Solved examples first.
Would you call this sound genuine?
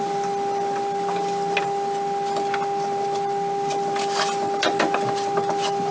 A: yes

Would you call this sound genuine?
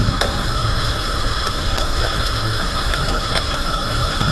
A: no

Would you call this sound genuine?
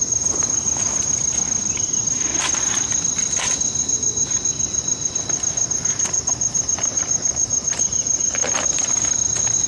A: yes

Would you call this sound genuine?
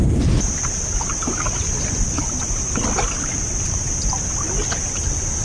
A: yes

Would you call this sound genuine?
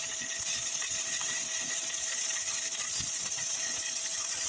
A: no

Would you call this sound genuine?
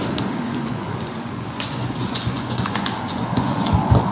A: no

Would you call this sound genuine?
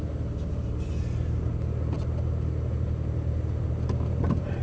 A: yes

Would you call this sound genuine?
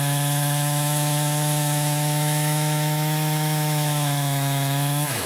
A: no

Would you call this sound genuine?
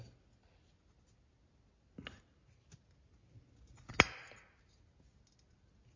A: yes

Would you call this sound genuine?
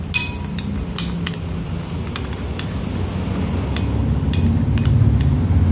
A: yes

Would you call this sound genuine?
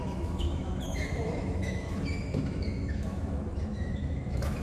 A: no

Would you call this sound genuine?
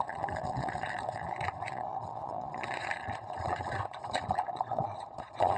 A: no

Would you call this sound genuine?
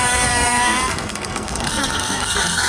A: no